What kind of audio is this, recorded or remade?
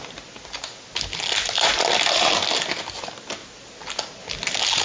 recorded